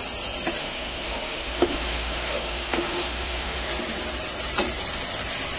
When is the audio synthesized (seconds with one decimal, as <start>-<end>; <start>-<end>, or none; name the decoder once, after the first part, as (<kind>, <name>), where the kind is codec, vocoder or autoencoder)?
0.6-3.7 (autoencoder, DAC-VAE)